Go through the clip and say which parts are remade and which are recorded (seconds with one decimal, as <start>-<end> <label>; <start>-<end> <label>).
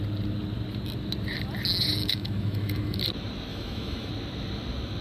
0.0-2.0 recorded; 2.0-3.0 remade; 3.0-3.5 recorded; 3.5-4.1 remade; 4.1-5.0 recorded